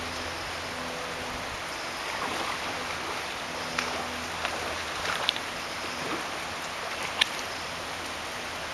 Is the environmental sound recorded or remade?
recorded